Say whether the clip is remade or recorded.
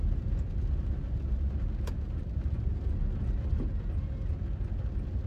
recorded